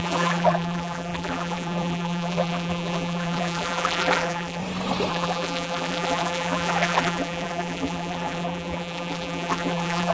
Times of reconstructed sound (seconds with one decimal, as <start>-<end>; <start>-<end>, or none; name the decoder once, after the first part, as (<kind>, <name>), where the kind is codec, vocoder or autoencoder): 0.0-4.6 (vocoder, BigVGAN v2); 5.1-10.1